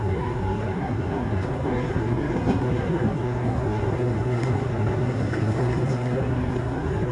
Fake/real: fake